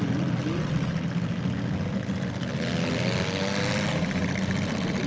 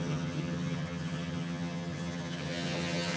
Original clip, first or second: first